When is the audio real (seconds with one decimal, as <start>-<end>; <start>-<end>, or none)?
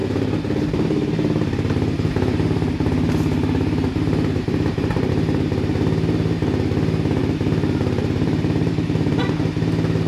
5.1-7.2; 9.3-10.1